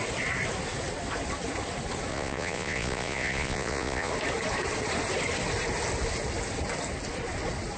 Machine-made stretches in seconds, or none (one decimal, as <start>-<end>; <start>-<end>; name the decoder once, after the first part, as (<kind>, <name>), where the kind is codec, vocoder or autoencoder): 2.1-4.1 (vocoder, Vocos)

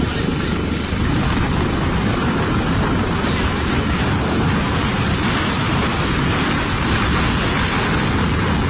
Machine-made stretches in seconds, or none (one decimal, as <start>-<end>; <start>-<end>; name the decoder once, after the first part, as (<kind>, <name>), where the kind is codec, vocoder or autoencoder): 4.8-5.8 (vocoder, BigVGAN v2)